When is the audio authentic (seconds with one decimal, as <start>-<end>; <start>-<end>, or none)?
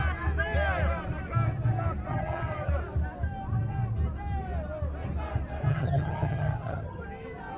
0.0-2.1; 2.7-5.7; 7.0-7.6